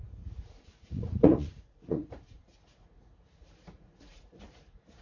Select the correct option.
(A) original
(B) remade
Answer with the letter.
B